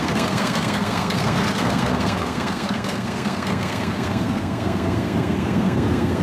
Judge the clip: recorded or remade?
remade